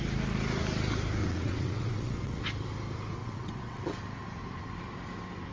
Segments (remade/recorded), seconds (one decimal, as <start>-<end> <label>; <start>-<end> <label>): 0.0-1.2 recorded; 1.2-2.4 remade; 2.4-3.2 recorded; 3.2-3.8 remade; 3.8-5.5 recorded